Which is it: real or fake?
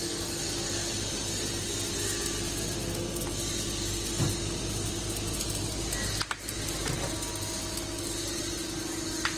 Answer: real